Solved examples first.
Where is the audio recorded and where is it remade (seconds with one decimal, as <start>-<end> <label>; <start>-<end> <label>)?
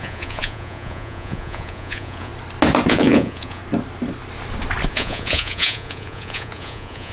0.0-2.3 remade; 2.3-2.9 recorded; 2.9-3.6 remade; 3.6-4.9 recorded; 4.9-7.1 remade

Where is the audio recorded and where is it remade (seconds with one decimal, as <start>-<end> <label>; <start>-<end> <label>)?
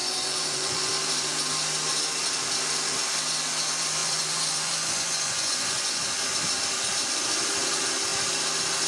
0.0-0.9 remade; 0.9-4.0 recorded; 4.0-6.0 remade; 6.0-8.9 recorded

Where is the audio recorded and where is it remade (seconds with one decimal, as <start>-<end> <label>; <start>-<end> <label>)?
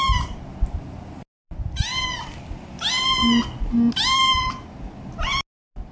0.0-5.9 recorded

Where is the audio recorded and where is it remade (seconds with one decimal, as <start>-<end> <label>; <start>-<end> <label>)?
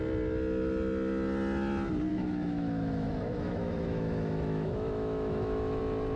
0.0-2.1 recorded; 2.1-5.8 remade; 5.8-6.2 recorded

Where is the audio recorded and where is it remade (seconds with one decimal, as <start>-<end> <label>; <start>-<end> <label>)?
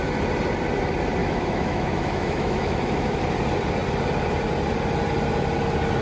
0.0-1.2 recorded; 1.2-3.2 remade; 3.2-6.0 recorded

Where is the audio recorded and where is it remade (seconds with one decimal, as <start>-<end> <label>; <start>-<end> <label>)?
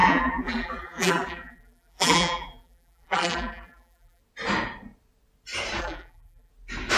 0.0-4.2 remade; 4.2-5.8 recorded; 5.8-6.5 remade; 6.5-7.0 recorded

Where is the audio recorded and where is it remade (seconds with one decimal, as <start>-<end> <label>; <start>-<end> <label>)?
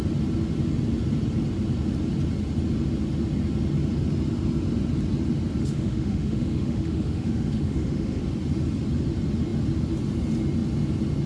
0.0-5.6 recorded; 5.6-8.2 remade; 8.2-11.3 recorded